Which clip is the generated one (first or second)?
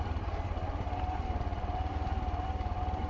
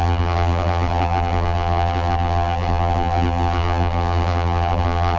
second